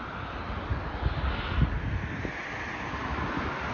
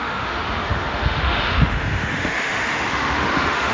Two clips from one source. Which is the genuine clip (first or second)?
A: first